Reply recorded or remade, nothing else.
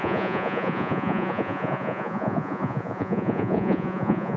remade